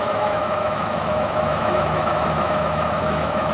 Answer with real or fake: fake